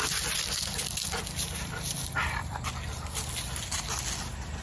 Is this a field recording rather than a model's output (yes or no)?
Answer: yes